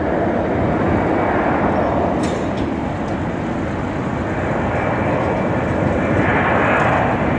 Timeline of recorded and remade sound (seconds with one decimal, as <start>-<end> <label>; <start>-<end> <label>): 0.0-7.4 recorded